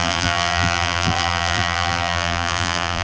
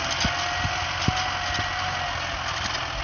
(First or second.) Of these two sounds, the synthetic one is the first